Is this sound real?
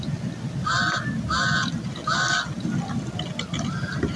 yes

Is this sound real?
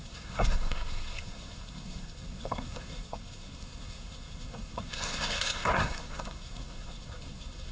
no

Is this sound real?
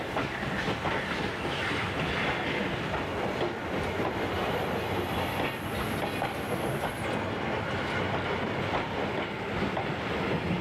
yes